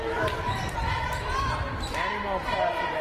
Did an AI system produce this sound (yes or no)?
no